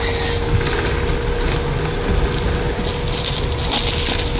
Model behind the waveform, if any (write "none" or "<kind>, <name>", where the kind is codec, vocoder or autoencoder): none